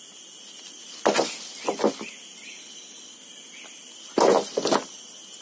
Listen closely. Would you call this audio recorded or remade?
recorded